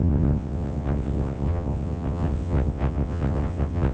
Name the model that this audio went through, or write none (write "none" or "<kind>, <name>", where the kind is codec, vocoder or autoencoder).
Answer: vocoder, WaveNeXt